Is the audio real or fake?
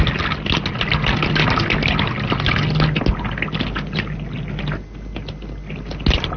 real